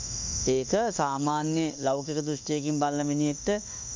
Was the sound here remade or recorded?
remade